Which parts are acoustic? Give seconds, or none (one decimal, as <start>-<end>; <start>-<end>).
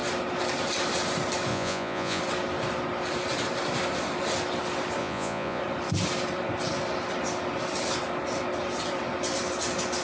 0.0-1.5; 2.2-5.0; 5.6-10.0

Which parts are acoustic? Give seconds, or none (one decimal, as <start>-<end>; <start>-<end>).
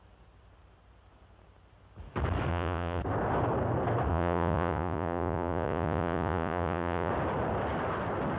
0.0-2.5; 3.0-4.1; 7.1-8.4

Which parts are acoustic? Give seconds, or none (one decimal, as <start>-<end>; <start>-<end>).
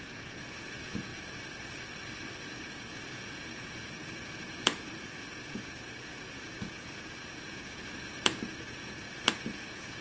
1.1-2.7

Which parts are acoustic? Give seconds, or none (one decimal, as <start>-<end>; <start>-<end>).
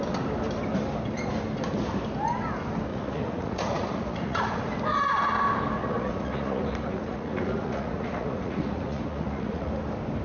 0.0-2.9; 4.6-5.8; 9.7-10.2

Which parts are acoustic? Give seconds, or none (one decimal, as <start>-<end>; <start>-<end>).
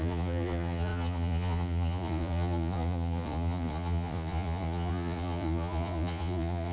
none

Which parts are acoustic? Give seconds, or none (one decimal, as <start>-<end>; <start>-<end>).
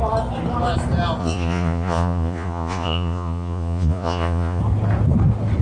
0.0-1.2; 4.6-5.6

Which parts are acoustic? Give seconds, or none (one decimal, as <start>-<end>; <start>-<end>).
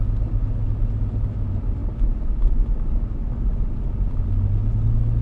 0.0-5.2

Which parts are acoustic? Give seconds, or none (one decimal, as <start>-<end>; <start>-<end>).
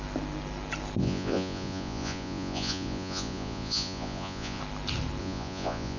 0.0-1.0; 4.6-5.2